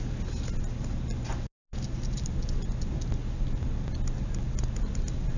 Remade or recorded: recorded